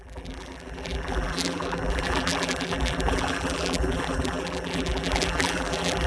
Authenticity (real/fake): fake